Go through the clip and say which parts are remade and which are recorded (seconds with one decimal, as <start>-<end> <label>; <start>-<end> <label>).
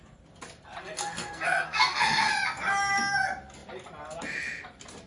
0.0-0.8 recorded; 0.8-2.3 remade; 2.3-5.1 recorded